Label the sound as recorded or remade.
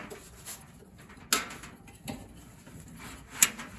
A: recorded